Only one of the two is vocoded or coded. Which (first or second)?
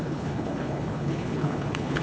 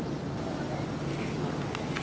first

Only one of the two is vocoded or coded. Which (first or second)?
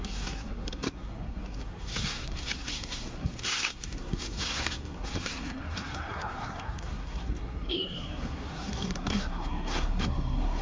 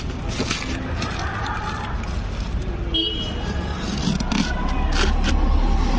first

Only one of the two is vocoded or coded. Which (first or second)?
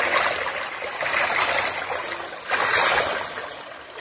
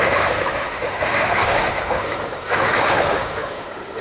second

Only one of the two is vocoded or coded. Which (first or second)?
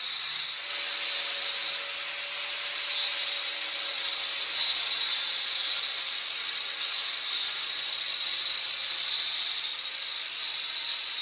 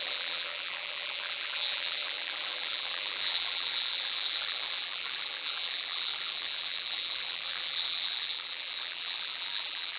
second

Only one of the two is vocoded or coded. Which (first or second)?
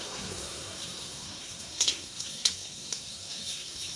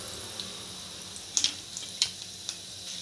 first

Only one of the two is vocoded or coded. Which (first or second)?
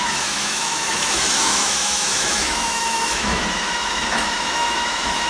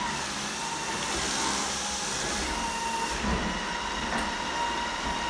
first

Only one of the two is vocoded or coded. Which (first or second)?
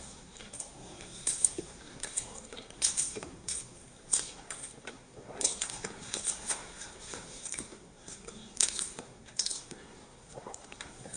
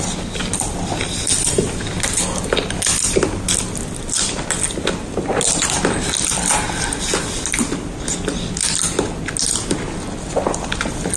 first